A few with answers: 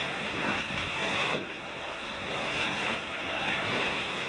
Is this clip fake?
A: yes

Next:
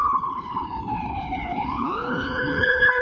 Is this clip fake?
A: yes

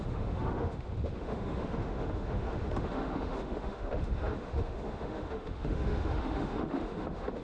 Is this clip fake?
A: yes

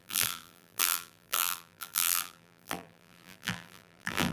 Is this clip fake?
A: yes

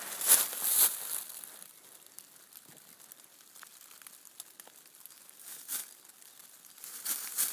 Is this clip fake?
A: no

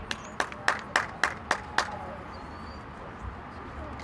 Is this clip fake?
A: no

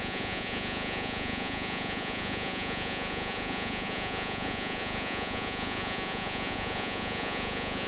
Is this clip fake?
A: yes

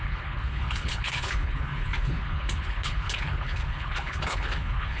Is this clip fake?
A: yes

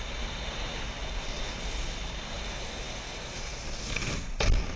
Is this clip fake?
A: no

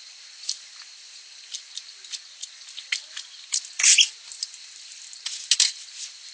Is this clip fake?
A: no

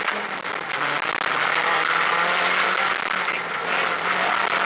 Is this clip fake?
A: no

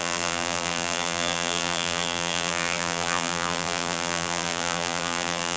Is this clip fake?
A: yes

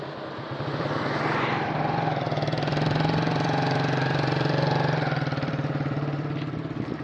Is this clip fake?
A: yes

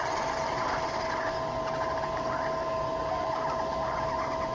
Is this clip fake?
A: no